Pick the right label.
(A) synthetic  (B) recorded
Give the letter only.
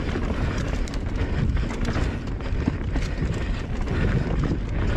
B